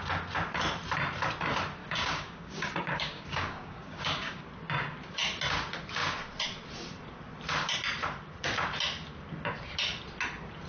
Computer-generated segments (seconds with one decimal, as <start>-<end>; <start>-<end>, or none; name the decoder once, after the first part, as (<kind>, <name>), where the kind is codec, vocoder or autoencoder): 1.8-4.4 (codec, DAC)